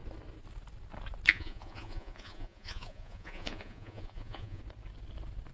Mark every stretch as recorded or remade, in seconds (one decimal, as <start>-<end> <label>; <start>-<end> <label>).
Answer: 0.0-1.3 recorded; 1.3-4.6 remade; 4.6-5.5 recorded